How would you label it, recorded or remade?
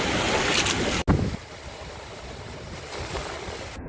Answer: recorded